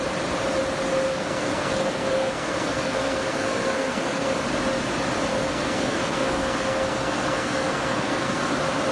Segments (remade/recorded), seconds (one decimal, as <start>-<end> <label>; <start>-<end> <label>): 0.0-1.1 recorded; 1.1-4.3 remade; 4.3-5.3 recorded; 5.3-8.5 remade; 8.5-8.9 recorded